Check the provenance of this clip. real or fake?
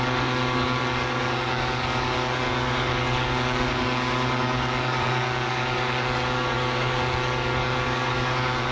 fake